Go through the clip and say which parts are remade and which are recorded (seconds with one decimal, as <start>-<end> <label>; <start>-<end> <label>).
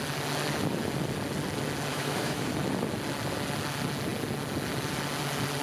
0.0-1.9 recorded; 1.9-2.5 remade; 2.5-5.6 recorded